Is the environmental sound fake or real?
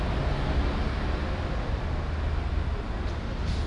real